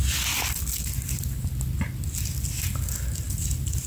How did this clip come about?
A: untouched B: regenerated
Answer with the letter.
A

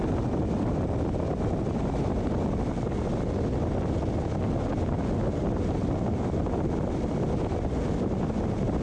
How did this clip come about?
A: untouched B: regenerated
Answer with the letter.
A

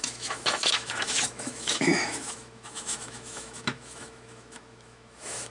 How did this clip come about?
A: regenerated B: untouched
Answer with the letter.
A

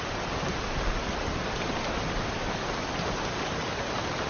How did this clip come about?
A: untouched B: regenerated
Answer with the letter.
A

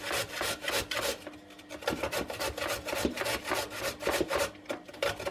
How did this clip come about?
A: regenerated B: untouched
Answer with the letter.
B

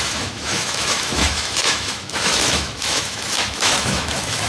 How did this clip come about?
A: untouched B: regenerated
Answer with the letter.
B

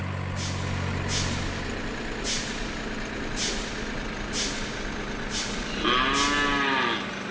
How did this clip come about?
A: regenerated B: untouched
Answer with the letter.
B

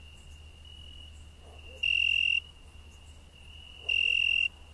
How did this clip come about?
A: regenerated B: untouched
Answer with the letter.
B